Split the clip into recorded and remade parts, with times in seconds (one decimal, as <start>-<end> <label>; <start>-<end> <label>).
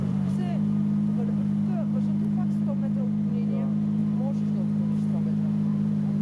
0.0-3.3 remade; 3.3-5.7 recorded; 5.7-6.2 remade